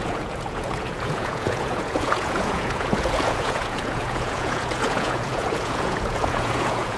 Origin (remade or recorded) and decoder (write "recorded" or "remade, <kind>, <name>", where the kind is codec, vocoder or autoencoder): remade, vocoder, Vocos